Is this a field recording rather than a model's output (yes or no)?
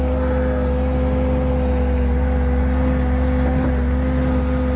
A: yes